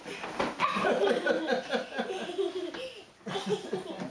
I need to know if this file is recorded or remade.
recorded